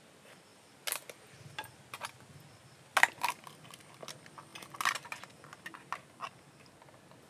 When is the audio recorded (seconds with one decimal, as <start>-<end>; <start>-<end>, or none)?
0.0-7.3